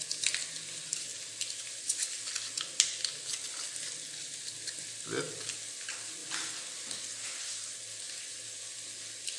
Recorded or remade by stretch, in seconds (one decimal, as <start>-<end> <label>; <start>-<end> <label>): 0.0-1.1 recorded; 1.1-1.8 remade; 1.8-9.4 recorded